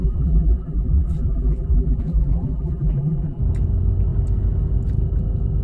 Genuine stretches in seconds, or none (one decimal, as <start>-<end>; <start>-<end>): 3.4-5.6